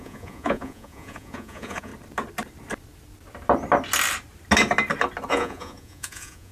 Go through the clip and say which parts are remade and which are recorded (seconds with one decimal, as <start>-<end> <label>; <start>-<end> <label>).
0.0-1.9 remade; 1.9-5.3 recorded; 5.3-6.5 remade